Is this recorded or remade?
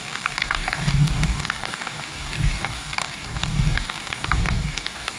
remade